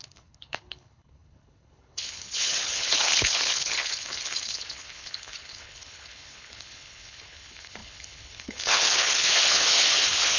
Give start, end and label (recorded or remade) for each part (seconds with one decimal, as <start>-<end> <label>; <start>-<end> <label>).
0.0-10.4 remade